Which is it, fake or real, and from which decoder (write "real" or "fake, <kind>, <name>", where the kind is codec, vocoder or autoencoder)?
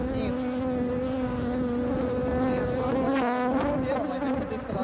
real